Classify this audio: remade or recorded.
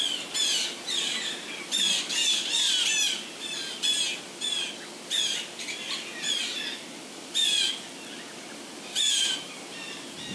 recorded